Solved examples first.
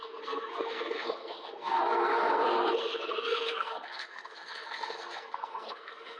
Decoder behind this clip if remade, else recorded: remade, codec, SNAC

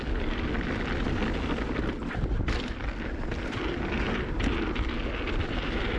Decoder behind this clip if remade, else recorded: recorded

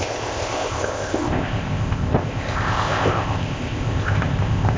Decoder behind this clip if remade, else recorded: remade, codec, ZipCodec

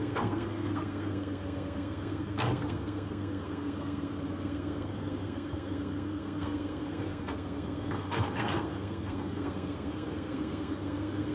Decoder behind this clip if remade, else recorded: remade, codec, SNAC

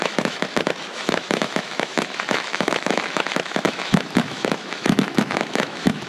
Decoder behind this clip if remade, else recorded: remade, autoencoder, DAC-VAE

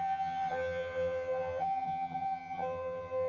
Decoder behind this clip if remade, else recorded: remade, vocoder, HiFi-GAN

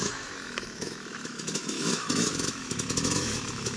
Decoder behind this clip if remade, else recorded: remade, autoencoder, DAC-VAE